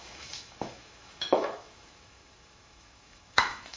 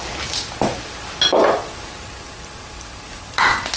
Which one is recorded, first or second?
second